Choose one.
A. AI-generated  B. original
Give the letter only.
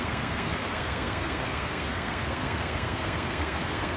A